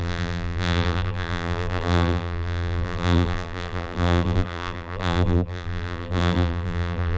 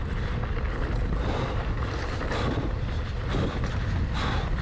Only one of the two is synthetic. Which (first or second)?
first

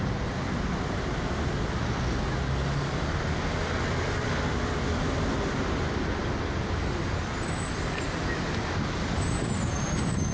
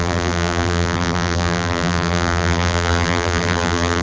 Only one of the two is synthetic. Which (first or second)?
second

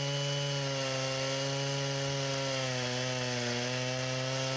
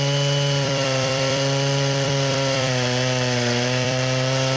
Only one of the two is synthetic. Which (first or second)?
second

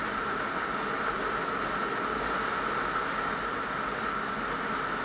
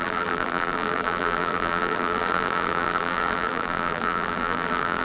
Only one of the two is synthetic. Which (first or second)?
second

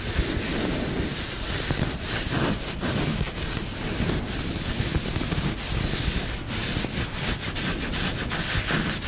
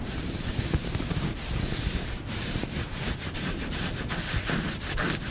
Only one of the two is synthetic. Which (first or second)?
second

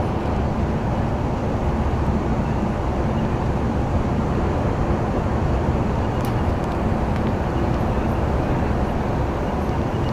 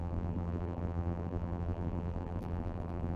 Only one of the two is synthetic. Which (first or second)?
second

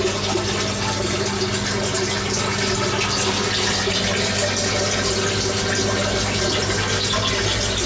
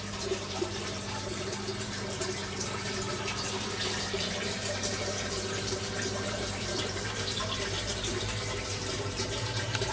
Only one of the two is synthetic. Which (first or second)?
second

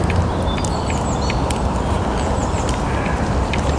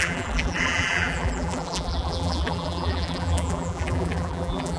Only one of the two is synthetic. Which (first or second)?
second